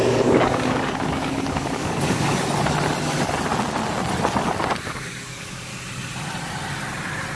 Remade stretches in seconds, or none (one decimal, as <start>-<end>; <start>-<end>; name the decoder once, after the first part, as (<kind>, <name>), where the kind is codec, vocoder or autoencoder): 0.0-2.3 (codec, DAC); 4.9-5.7